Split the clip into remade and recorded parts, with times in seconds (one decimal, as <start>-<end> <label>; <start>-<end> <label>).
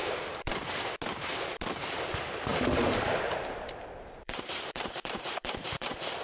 0.0-0.9 remade; 0.9-2.5 recorded; 2.5-6.2 remade